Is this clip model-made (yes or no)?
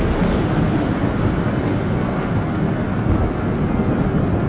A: no